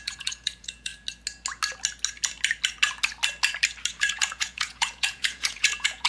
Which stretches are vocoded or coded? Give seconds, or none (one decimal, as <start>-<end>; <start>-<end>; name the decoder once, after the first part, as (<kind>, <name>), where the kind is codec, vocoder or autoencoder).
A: 0.0-0.9 (vocoder, Vocos); 4.0-6.1